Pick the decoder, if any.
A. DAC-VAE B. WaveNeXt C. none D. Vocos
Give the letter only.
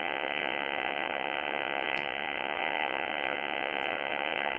B